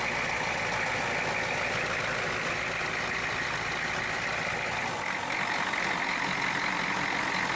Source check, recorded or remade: recorded